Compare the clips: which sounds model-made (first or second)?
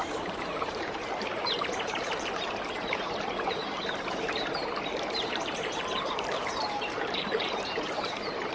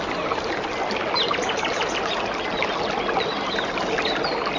first